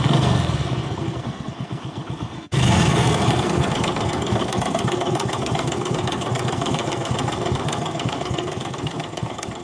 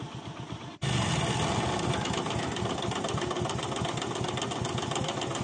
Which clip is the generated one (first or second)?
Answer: first